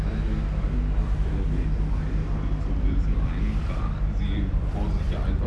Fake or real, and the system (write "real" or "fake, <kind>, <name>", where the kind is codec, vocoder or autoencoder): fake, vocoder, BigVGAN v2